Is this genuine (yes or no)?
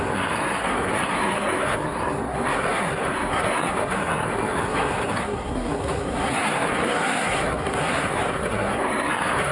no